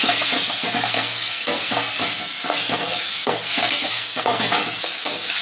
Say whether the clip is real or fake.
fake